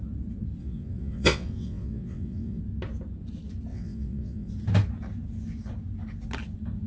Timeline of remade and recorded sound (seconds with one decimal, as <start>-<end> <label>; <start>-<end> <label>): 0.0-0.6 recorded; 0.6-2.6 remade; 2.6-3.7 recorded; 3.7-4.5 remade; 4.5-6.9 recorded

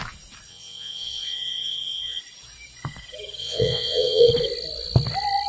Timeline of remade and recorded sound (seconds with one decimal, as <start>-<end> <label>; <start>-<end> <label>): 0.0-0.5 recorded; 0.5-2.2 remade; 2.2-3.4 recorded; 3.4-4.3 remade; 4.3-5.5 recorded

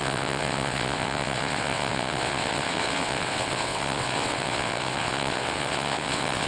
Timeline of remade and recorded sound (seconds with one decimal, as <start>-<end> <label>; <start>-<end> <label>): 0.0-6.5 remade

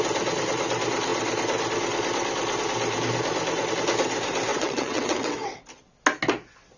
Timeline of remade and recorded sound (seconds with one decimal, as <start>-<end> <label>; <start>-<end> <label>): 0.0-4.5 recorded; 4.5-5.6 remade; 5.6-6.8 recorded

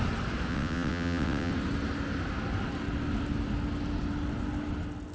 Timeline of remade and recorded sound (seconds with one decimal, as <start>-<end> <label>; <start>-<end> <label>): 0.0-0.5 recorded; 0.5-1.5 remade; 1.5-5.1 recorded

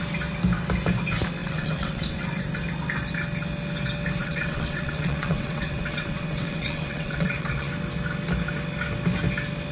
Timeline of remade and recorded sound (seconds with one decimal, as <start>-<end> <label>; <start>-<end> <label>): 0.0-1.4 recorded; 1.4-2.4 remade; 2.4-4.2 recorded; 4.2-7.7 remade; 7.7-9.7 recorded